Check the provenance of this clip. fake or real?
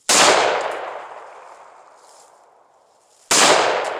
real